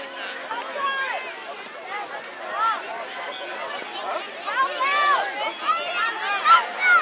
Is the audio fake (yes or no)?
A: no